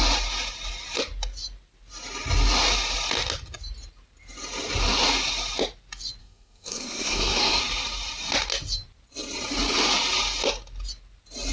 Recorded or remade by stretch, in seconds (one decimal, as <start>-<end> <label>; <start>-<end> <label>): 0.0-6.2 recorded; 6.2-7.6 remade; 7.6-11.5 recorded